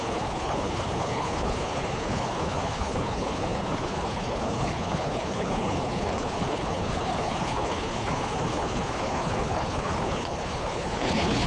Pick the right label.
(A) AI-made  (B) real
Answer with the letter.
A